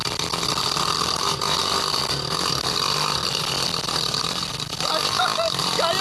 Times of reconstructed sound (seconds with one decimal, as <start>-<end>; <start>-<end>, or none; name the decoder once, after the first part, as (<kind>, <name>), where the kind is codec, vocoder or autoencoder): none